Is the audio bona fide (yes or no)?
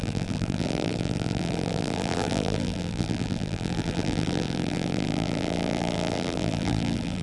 no